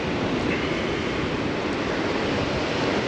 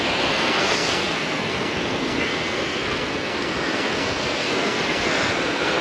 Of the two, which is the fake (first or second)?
second